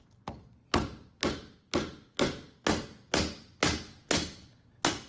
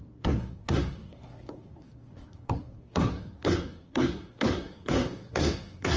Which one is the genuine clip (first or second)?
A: first